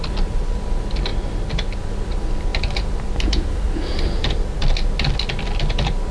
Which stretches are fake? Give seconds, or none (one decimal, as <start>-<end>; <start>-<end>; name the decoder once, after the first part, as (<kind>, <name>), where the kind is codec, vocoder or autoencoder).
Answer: none